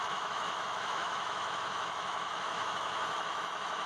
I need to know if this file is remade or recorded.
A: remade